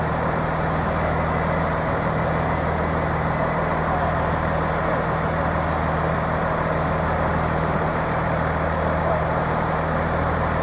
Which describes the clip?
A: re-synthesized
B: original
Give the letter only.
B